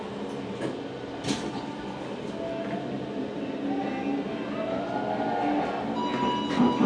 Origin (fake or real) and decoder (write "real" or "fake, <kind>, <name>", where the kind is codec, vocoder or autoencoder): real